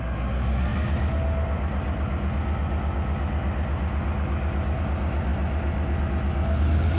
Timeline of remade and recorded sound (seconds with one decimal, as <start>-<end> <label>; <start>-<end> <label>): 0.0-7.0 recorded